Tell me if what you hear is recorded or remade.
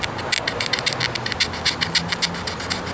recorded